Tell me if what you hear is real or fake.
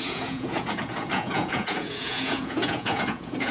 fake